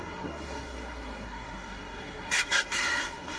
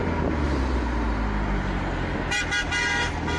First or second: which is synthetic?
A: first